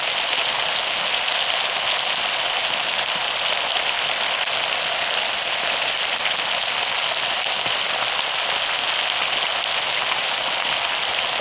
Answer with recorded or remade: recorded